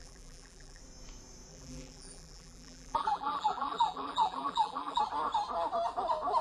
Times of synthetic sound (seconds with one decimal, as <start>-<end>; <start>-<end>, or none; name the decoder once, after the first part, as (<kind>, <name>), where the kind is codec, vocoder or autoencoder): 0.0-0.8 (vocoder, BigVGAN v2); 1.5-5.0